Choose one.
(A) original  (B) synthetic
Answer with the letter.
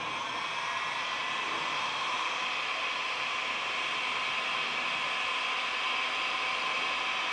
A